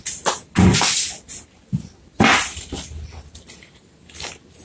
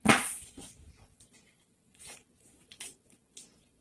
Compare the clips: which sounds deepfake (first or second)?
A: second